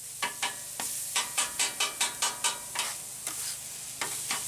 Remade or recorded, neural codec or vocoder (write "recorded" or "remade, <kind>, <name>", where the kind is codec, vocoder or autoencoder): recorded